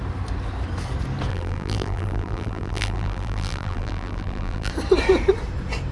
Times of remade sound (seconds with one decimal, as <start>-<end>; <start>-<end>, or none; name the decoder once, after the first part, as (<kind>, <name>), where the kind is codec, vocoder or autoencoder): 1.3-4.7 (vocoder, BigVGAN v2)